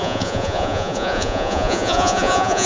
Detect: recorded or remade remade